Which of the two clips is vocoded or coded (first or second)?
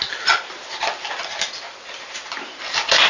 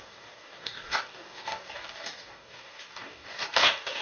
second